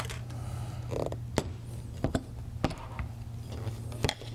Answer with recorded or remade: recorded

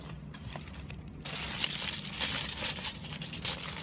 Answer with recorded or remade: recorded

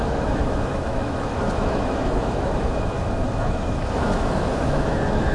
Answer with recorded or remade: remade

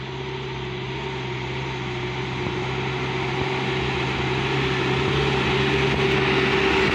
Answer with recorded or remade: recorded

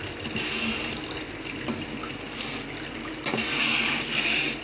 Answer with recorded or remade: recorded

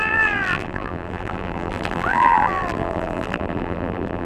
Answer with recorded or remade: remade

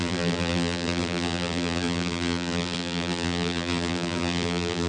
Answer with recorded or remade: remade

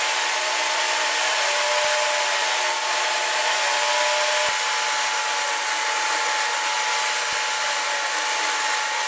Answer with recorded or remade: recorded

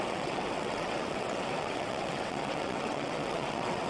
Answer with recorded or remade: remade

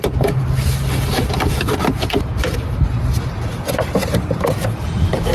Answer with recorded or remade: remade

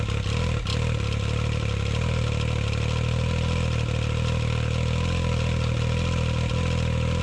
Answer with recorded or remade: recorded